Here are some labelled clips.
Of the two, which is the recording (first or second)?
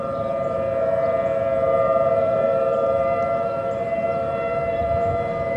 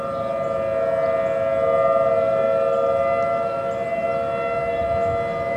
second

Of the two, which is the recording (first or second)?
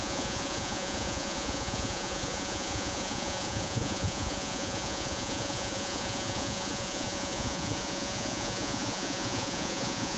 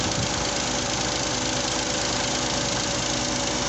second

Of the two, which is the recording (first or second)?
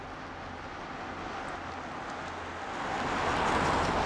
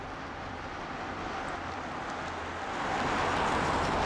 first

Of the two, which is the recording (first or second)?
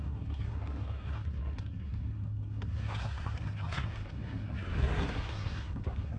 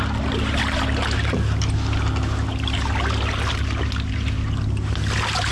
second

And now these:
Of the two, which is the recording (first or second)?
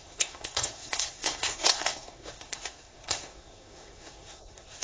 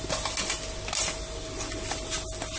second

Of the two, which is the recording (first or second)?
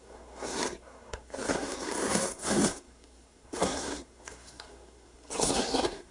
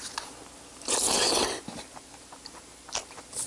second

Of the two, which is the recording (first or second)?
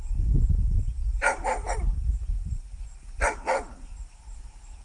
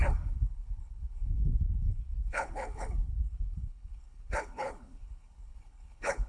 first